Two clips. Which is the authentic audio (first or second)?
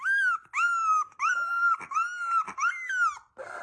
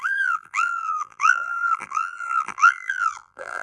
first